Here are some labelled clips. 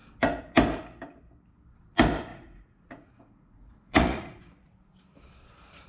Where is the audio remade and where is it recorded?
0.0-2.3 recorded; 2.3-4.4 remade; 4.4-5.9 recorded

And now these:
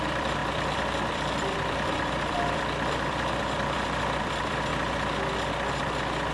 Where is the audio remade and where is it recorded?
0.0-4.7 remade; 4.7-6.3 recorded